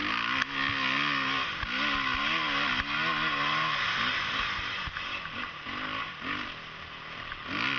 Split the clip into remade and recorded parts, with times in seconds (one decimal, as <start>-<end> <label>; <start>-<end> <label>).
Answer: 0.0-7.8 recorded